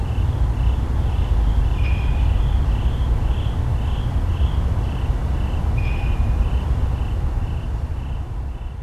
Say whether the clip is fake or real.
real